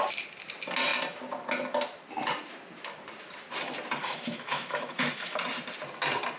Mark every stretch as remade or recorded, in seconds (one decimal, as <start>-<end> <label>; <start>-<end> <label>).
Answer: 0.0-4.0 recorded; 4.0-5.4 remade; 5.4-6.4 recorded